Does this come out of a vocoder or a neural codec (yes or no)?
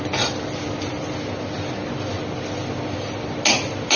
no